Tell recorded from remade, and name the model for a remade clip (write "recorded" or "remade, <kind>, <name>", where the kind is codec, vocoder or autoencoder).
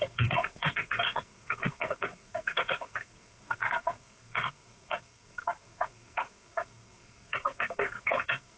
remade, codec, SNAC